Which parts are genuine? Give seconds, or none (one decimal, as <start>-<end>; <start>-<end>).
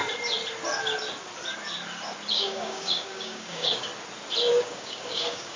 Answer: 0.0-2.3; 3.9-4.5